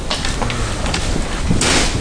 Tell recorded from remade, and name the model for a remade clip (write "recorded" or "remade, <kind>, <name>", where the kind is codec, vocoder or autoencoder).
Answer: recorded